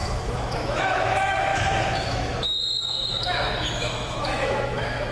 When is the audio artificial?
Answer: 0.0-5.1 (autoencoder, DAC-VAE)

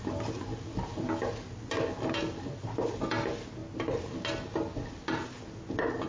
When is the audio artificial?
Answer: none

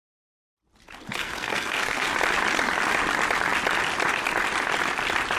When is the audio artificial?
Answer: 1.1-2.1 (codec, SNAC)

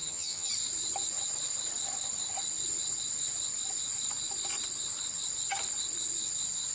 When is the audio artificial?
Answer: 0.0-0.5 (vocoder, HiFi-GAN)

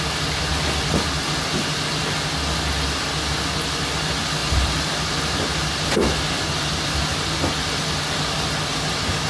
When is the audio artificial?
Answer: none